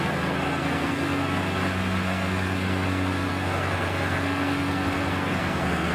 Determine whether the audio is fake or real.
fake